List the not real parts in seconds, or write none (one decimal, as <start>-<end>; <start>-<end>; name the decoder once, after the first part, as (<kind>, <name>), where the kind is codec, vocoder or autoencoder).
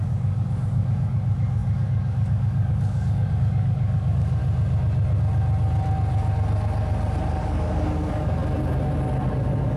0.0-4.4 (codec, DAC); 7.4-8.4; 9.3-9.8